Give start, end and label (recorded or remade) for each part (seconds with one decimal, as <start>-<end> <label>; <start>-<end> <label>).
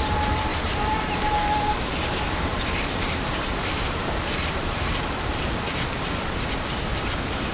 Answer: 0.0-0.5 recorded; 0.5-5.0 remade; 5.0-7.5 recorded